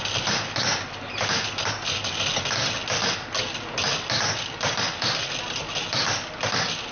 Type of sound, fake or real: real